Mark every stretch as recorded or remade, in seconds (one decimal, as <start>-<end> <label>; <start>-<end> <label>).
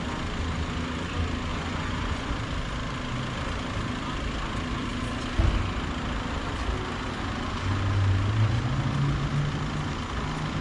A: 0.0-1.5 recorded; 1.5-2.3 remade; 2.3-10.6 recorded